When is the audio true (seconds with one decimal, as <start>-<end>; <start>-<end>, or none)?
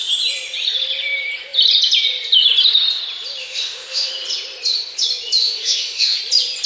0.0-3.4; 4.1-5.4; 6.2-6.7